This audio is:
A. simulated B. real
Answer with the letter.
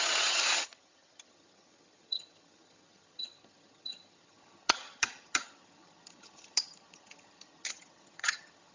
A